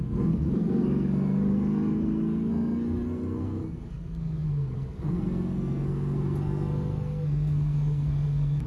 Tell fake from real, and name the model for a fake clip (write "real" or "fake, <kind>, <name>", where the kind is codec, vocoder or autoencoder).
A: fake, codec, SNAC